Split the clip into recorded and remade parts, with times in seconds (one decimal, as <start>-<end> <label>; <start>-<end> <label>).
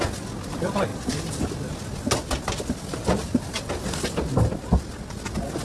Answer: 0.0-5.6 recorded